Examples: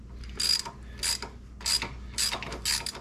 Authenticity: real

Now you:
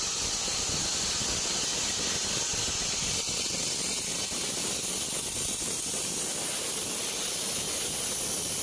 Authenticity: real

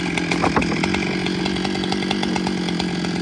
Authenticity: real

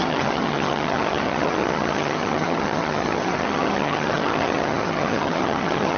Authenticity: fake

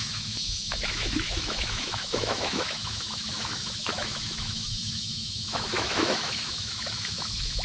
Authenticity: fake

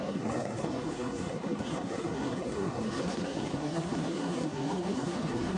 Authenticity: fake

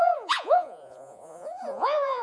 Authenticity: fake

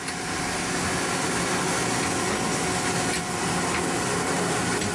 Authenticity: real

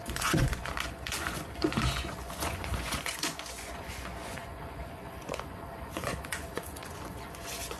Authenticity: fake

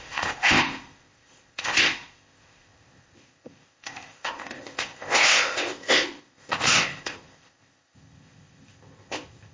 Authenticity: fake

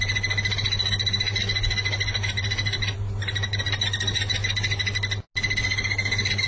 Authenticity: real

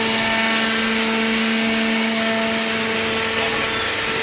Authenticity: real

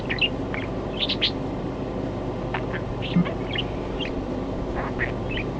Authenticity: real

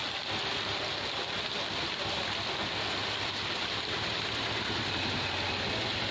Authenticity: real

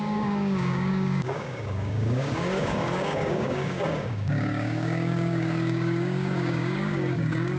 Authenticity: fake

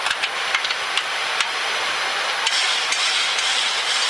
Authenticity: real